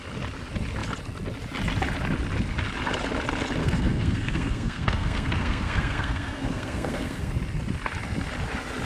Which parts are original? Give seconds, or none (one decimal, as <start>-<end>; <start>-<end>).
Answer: 0.0-3.6; 7.3-8.8